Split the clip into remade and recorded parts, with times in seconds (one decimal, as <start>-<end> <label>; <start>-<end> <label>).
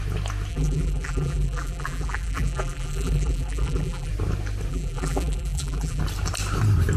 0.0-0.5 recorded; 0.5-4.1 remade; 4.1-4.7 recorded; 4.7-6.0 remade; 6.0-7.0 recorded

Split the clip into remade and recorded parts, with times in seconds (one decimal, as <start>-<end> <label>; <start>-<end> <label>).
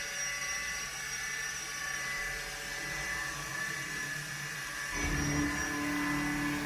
0.0-0.4 recorded; 0.4-2.2 remade; 2.2-3.5 recorded; 3.5-4.8 remade; 4.8-6.7 recorded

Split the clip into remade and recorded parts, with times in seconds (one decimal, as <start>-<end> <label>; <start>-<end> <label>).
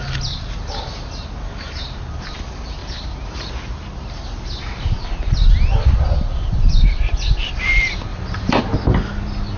0.0-2.8 recorded; 2.8-3.5 remade; 3.5-8.1 recorded; 8.1-8.6 remade; 8.6-9.6 recorded